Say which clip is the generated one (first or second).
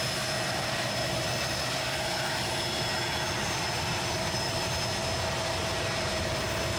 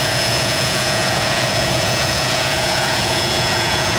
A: second